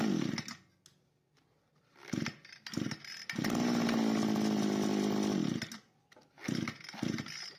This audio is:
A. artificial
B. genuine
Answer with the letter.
B